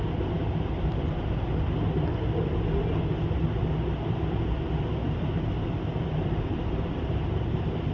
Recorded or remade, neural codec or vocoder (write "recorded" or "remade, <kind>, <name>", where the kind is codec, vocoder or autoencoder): recorded